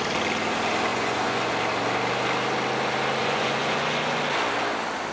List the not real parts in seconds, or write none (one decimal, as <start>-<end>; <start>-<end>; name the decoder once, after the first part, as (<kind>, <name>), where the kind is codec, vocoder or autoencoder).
0.9-1.5 (vocoder, Vocos); 3.2-4.2